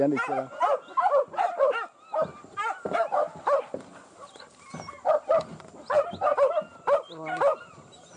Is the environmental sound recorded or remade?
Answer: recorded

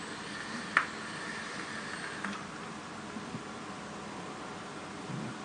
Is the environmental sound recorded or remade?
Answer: recorded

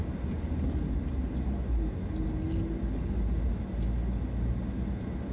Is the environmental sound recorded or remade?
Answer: recorded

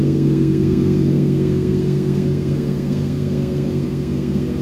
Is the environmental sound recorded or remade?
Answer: remade